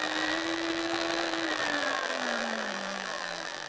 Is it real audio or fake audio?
fake